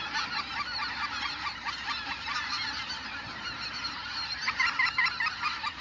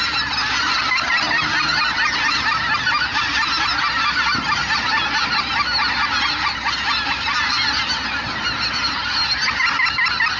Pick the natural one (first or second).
second